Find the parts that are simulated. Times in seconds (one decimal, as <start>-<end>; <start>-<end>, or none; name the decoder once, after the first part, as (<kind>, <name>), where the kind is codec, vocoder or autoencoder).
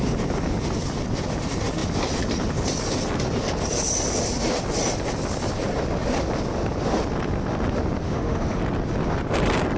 8.0-8.6 (autoencoder, DAC-VAE)